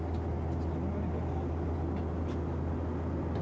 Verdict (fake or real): real